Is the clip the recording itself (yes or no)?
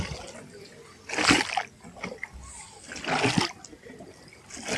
yes